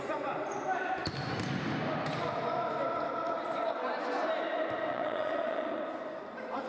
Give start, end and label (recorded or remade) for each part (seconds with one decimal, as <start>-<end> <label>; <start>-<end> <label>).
0.0-4.9 recorded; 4.9-5.8 remade; 5.8-6.7 recorded